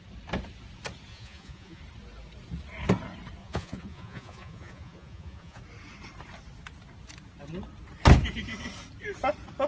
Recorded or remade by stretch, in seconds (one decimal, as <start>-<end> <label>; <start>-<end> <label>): 0.0-1.1 recorded; 1.1-1.8 remade; 1.8-3.4 recorded; 3.4-5.6 remade; 5.6-9.7 recorded